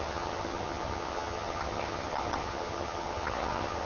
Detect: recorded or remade remade